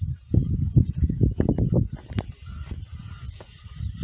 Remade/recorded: recorded